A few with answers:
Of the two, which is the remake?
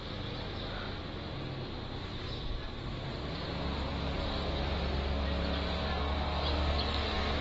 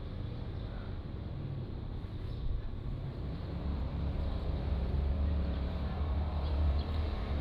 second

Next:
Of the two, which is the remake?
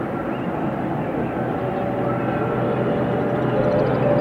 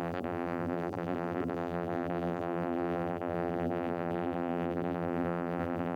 second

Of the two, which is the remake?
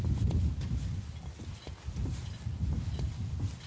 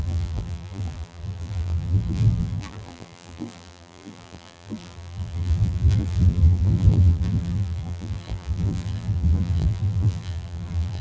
second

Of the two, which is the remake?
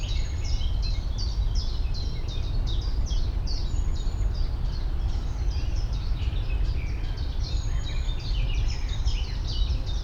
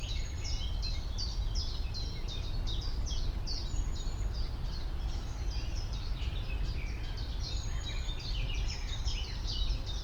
first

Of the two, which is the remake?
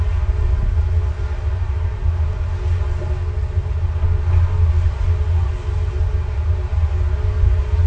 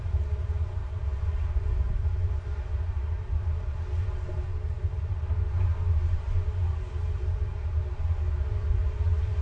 second